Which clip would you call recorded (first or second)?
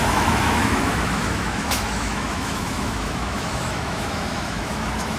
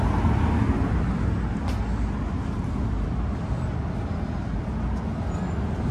second